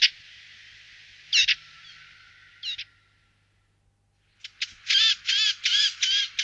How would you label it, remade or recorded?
recorded